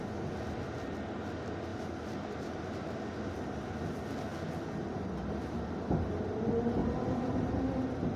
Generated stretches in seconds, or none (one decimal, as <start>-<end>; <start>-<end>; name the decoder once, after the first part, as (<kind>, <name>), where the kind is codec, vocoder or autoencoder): 1.7-2.9 (vocoder, BigVGAN v2); 6.8-7.5